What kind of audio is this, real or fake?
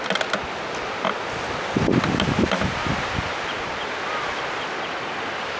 real